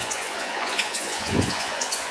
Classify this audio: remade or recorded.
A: remade